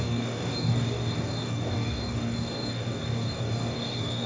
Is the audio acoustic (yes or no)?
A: no